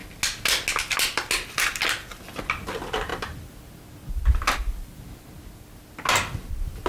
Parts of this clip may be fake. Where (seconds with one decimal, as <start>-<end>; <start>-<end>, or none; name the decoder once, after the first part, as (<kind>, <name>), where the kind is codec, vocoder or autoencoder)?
none